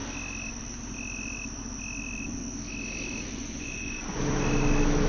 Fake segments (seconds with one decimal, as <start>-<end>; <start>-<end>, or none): 3.4-4.2